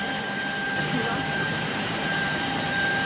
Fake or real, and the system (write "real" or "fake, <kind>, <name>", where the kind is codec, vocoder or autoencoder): fake, vocoder, BigVGAN v2